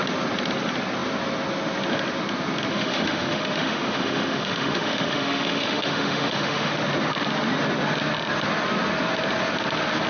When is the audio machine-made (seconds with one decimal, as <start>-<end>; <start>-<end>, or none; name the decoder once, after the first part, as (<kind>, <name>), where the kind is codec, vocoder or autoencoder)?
2.7-6.7 (autoencoder, DAC-VAE)